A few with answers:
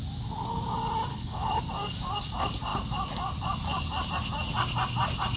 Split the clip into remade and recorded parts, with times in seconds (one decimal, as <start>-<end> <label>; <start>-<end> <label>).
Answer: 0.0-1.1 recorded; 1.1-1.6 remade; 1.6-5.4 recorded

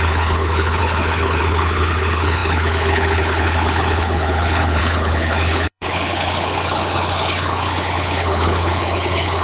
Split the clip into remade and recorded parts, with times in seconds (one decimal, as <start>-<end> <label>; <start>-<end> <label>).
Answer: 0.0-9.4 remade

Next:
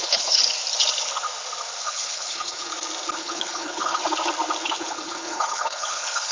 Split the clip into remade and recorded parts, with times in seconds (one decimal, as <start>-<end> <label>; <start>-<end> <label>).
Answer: 0.0-0.4 remade; 0.4-1.8 recorded; 1.8-2.7 remade; 2.7-3.2 recorded; 3.2-4.0 remade; 4.0-4.6 recorded; 4.6-6.3 remade

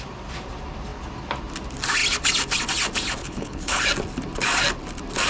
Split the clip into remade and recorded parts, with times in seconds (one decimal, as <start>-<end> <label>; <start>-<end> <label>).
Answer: 0.0-3.2 recorded; 3.2-3.8 remade; 3.8-5.3 recorded